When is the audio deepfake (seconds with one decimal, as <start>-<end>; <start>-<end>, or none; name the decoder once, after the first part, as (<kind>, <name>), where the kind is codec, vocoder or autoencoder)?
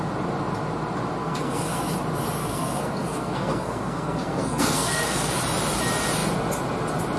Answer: 1.2-1.9 (codec, SNAC); 2.4-5.4